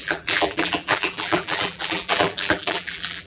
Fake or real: fake